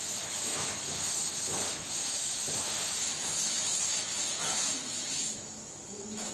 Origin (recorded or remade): remade